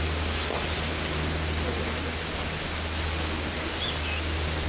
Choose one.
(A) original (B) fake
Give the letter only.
A